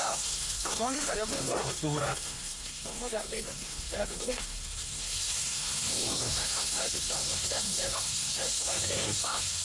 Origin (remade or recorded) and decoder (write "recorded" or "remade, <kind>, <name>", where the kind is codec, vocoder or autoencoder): remade, codec, SNAC